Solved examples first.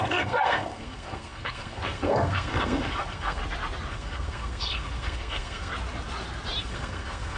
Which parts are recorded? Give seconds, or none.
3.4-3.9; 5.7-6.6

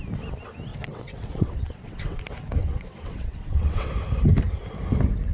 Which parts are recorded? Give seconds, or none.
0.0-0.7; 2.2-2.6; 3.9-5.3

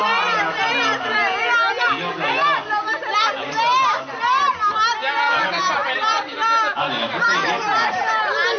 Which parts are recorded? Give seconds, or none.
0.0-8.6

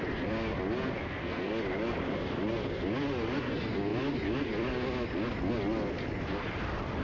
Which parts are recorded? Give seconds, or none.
0.0-1.0; 1.5-7.0